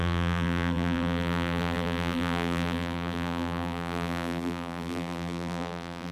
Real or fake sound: fake